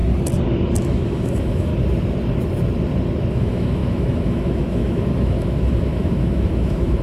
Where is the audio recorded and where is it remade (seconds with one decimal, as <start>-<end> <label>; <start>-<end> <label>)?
0.0-0.8 recorded; 0.8-1.7 remade; 1.7-3.3 recorded; 3.3-7.0 remade